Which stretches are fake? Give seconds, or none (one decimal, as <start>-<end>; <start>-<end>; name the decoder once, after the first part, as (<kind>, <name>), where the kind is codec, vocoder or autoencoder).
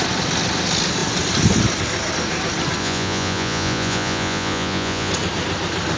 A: 2.8-5.1 (vocoder, Vocos)